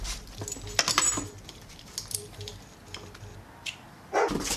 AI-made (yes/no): no